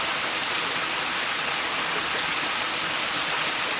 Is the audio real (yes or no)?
yes